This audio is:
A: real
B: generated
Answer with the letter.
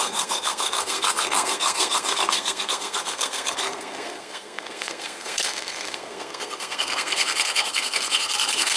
B